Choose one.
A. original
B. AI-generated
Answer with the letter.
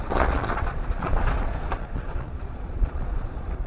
B